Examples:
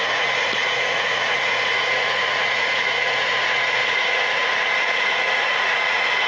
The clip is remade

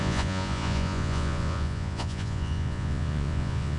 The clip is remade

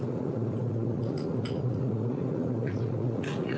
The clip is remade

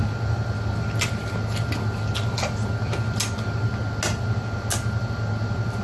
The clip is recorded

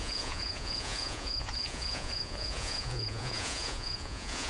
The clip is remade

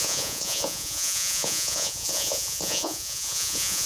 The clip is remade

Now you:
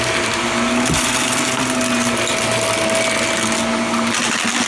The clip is recorded